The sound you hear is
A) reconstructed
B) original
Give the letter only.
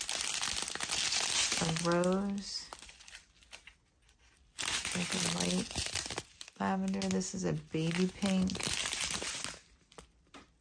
B